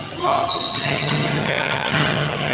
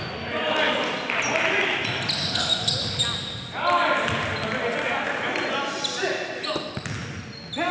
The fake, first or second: first